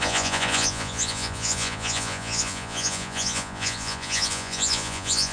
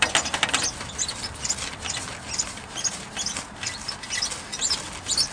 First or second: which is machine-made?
first